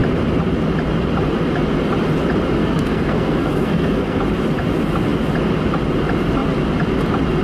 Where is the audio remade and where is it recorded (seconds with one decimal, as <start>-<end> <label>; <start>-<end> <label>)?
0.0-2.6 recorded; 2.6-4.2 remade; 4.2-7.4 recorded